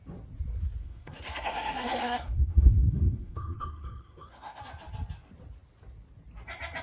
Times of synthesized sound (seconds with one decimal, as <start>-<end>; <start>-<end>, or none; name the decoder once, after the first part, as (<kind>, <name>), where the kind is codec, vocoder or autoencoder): 0.8-4.6 (codec, SNAC)